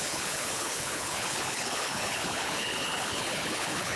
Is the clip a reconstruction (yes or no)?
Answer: yes